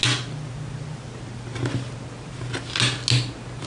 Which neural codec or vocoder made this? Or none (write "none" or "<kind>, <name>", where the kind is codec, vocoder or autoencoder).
none